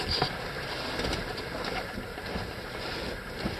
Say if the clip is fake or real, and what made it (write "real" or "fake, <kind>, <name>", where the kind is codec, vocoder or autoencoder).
real